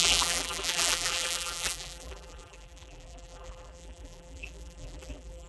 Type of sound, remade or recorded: remade